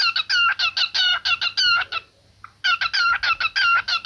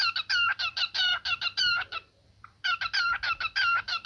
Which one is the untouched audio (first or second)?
first